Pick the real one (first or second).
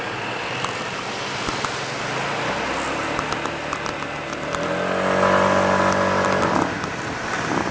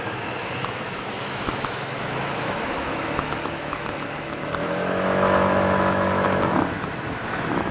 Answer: first